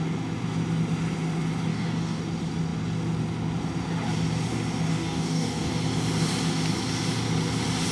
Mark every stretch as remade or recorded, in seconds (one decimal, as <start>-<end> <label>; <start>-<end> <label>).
0.0-1.7 recorded; 1.7-2.2 remade; 2.2-4.9 recorded; 4.9-5.7 remade; 5.7-7.9 recorded